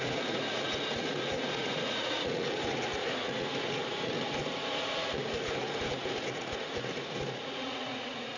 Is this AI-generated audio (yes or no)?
yes